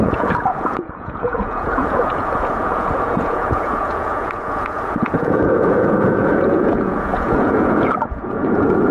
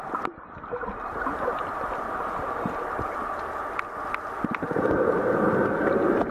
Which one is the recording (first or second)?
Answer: second